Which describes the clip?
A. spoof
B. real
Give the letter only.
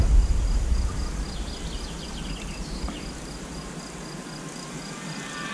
B